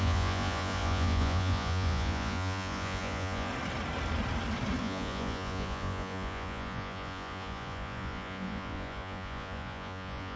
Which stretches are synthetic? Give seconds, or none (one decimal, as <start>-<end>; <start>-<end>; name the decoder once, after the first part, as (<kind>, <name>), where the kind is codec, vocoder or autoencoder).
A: 0.0-3.5 (vocoder, Vocos); 4.8-10.4